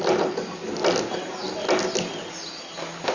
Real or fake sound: real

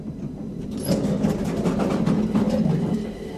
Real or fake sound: fake